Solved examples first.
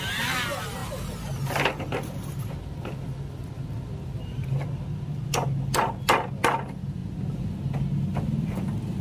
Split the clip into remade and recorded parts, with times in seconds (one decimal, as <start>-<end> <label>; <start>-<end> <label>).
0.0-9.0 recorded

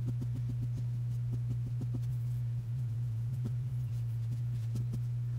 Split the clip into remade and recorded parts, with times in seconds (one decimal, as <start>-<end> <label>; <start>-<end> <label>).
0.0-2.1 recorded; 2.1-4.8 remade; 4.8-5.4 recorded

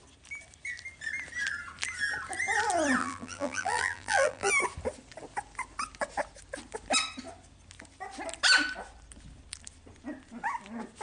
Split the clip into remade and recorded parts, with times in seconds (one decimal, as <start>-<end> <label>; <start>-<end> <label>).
0.0-3.0 recorded; 3.0-4.5 remade; 4.5-11.0 recorded

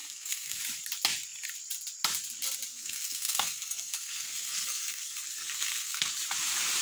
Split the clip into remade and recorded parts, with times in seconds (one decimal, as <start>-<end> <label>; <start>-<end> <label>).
0.0-0.6 remade; 0.6-2.7 recorded; 2.7-6.1 remade; 6.1-6.8 recorded

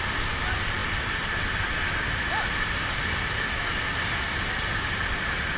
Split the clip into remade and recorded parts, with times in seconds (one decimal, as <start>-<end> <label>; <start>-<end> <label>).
0.0-5.6 recorded